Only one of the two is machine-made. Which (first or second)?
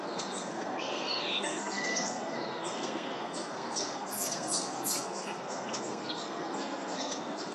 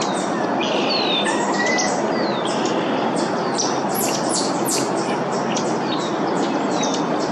first